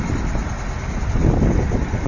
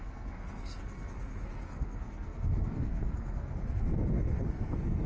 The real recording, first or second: first